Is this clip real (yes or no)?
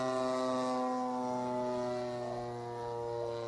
yes